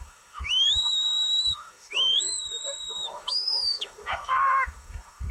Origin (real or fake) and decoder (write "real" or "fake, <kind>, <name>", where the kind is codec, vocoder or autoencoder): fake, autoencoder, DAC-VAE